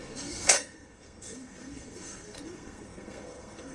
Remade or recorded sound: remade